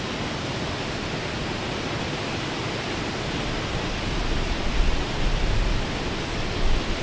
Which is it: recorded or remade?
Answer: recorded